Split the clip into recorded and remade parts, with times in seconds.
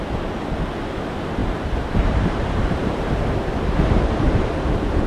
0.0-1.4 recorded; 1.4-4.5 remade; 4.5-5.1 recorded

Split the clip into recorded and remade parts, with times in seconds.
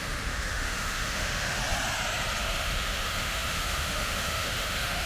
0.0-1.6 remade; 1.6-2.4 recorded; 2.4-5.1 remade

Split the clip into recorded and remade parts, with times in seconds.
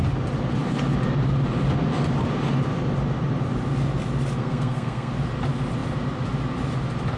0.0-4.4 recorded; 4.4-5.1 remade; 5.1-7.2 recorded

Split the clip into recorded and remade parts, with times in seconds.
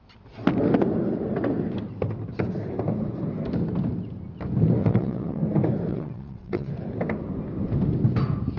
0.0-4.8 recorded; 4.8-5.4 remade; 5.4-5.9 recorded; 5.9-6.7 remade; 6.7-8.6 recorded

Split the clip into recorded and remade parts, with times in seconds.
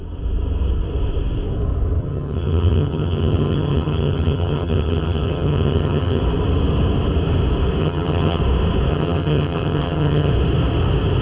0.0-2.0 recorded; 2.0-6.2 remade; 6.2-7.8 recorded; 7.8-8.4 remade; 8.4-8.9 recorded; 8.9-10.3 remade; 10.3-11.2 recorded